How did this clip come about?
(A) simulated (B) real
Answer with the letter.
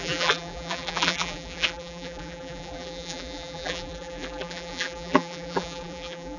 A